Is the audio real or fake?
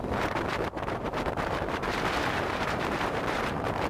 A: fake